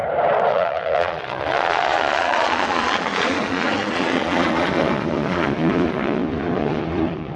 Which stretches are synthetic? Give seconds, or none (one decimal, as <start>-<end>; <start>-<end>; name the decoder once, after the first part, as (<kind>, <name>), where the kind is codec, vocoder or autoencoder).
0.5-7.4 (vocoder, Vocos)